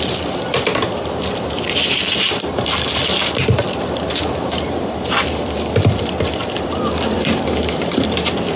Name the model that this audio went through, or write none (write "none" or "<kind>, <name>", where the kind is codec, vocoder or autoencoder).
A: vocoder, BigVGAN v2